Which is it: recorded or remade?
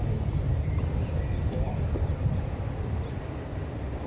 recorded